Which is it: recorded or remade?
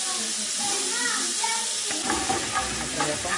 recorded